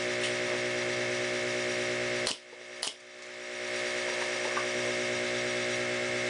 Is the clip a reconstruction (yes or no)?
no